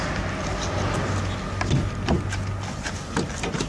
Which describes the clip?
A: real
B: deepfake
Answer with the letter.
A